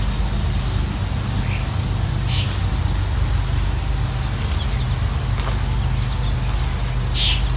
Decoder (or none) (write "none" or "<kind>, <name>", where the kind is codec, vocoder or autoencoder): none